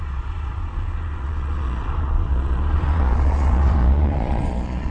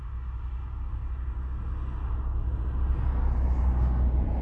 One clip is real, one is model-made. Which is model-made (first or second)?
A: first